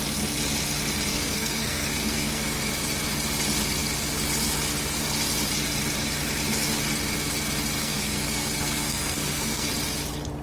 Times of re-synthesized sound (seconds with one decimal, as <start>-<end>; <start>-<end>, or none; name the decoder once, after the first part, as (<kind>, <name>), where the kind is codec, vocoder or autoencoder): 1.1-2.6 (codec, SNAC); 7.8-9.7